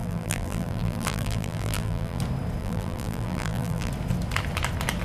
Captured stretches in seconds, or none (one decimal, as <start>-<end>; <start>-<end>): 2.2-2.6; 3.9-5.0